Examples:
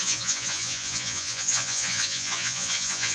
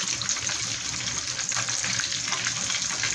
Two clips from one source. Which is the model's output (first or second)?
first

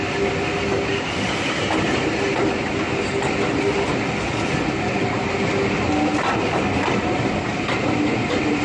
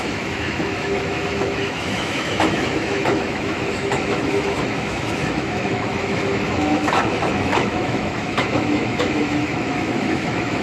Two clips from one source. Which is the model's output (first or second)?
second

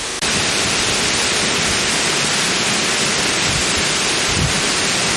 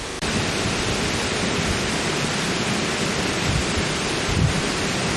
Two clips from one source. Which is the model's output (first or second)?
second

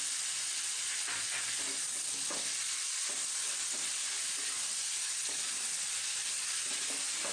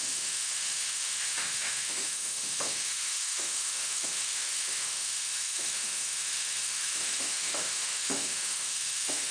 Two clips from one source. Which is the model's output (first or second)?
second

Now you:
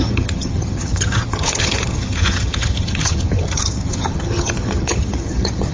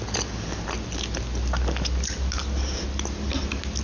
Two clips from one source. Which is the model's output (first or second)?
first